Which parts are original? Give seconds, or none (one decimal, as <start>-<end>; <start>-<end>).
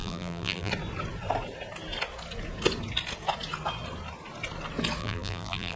0.7-5.0